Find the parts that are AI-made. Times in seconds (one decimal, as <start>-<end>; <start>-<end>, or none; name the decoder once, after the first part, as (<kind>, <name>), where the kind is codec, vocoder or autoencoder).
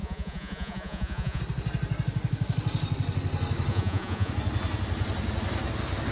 0.0-1.4 (vocoder, Vocos); 3.7-4.3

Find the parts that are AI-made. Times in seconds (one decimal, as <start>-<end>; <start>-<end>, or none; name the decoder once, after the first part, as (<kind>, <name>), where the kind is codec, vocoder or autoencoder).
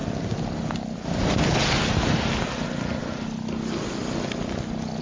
none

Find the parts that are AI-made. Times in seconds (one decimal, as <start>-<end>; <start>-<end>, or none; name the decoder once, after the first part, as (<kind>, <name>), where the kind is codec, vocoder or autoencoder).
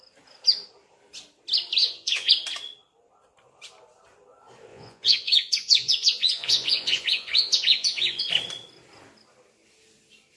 1.8-2.3 (vocoder, Vocos); 4.7-8.2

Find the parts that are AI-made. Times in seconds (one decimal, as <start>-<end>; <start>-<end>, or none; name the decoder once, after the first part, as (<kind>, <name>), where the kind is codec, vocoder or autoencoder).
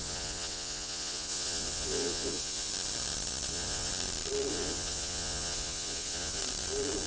0.0-2.7 (vocoder, Vocos); 3.5-3.9; 4.5-6.4